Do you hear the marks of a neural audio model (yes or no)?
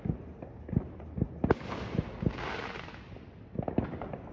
no